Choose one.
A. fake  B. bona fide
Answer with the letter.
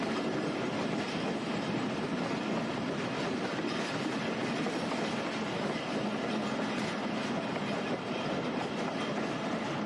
B